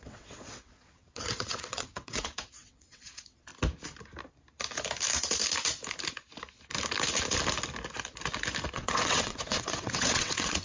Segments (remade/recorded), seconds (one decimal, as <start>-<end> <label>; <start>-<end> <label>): 0.0-3.5 remade; 3.5-8.7 recorded; 8.7-10.6 remade